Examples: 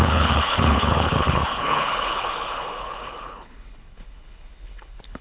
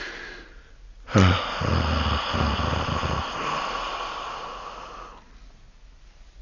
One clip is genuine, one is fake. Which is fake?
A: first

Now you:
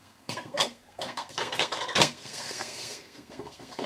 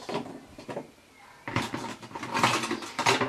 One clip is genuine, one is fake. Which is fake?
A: first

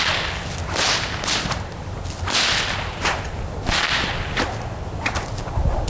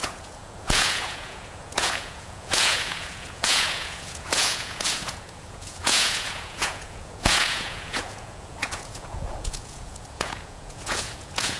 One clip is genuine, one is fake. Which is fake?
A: second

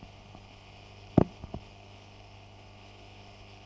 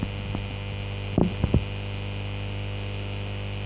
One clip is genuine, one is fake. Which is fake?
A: first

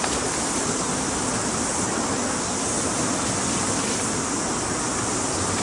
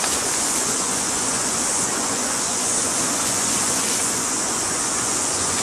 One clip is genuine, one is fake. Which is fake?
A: second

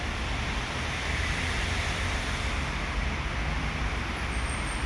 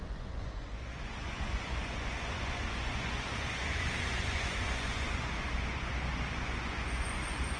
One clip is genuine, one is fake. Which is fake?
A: second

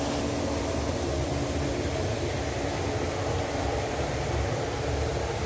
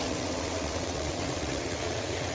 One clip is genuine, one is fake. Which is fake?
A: second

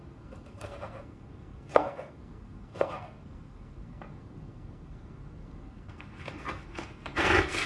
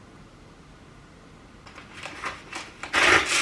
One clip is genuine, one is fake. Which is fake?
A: first